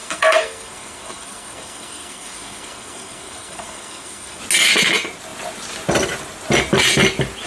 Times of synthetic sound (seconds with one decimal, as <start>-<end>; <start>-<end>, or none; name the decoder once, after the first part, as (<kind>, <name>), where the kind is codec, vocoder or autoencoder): 0.0-4.4 (codec, SNAC)